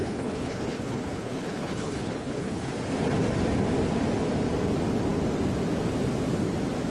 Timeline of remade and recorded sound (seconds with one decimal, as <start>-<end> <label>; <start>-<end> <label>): 0.0-2.7 remade; 2.7-6.9 recorded